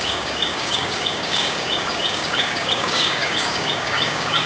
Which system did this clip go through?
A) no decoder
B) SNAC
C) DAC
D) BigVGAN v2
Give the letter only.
C